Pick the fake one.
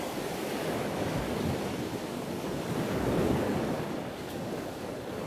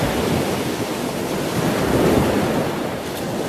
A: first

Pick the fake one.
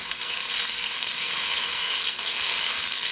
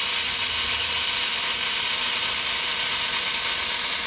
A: first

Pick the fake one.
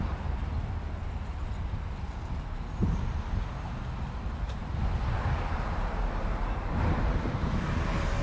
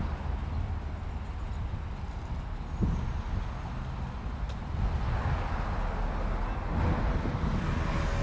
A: first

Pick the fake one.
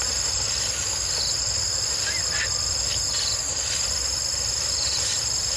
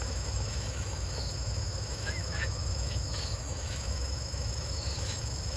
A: second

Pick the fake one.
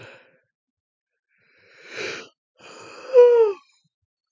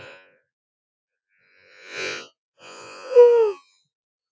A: second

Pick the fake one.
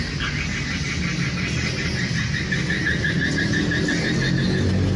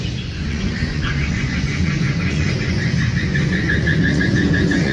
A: second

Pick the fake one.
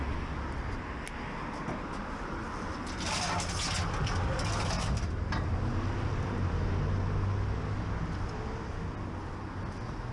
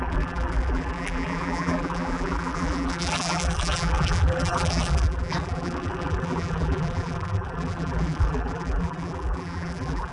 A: second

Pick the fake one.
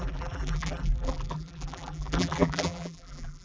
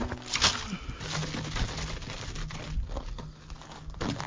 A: first